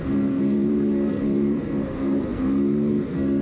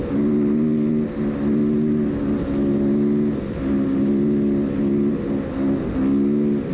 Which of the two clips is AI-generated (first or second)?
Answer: first